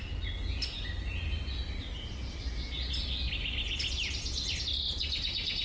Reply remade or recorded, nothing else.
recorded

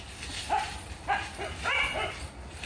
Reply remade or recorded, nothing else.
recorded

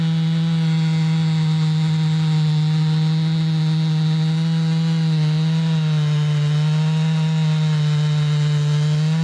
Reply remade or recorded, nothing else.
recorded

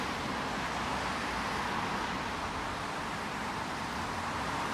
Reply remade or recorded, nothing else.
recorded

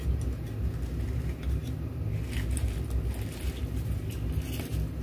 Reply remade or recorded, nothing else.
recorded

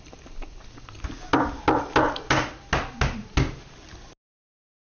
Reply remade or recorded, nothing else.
recorded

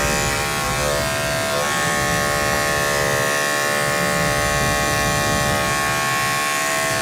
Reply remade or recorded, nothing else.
recorded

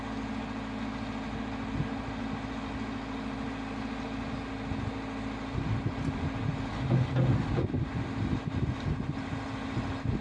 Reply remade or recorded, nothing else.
recorded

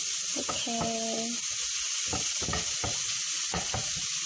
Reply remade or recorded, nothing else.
recorded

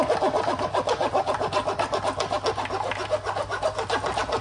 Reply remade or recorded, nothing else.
recorded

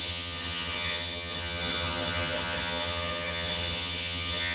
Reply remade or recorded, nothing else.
remade